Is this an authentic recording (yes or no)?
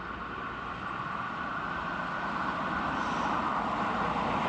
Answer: yes